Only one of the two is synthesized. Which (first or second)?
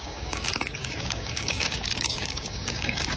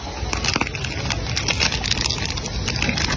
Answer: first